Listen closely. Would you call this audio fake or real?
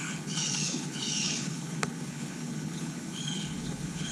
fake